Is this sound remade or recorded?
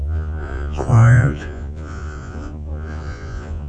remade